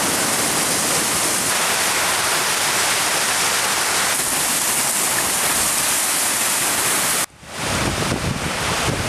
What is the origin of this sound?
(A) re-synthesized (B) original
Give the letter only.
B